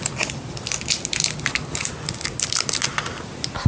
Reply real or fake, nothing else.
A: real